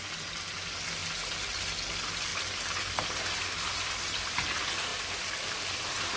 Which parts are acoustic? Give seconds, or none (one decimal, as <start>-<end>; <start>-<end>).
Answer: 0.0-4.9; 5.7-6.2